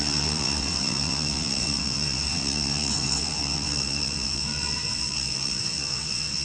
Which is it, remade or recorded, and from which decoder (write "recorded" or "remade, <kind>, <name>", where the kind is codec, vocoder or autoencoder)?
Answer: remade, vocoder, WaveNeXt